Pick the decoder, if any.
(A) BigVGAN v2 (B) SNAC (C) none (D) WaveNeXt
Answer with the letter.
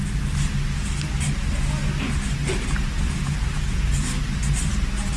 A